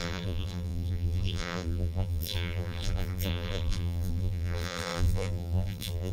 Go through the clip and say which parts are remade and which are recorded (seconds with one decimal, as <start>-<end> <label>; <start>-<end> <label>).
0.0-6.1 remade